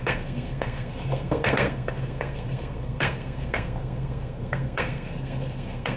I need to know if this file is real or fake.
fake